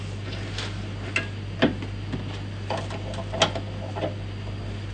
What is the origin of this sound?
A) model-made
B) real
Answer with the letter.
B